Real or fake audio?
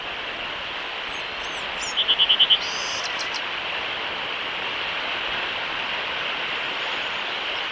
real